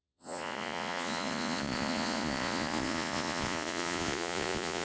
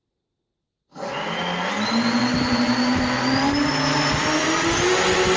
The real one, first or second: second